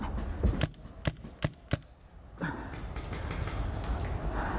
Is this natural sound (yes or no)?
yes